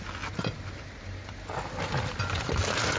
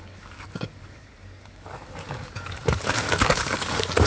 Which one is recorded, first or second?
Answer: first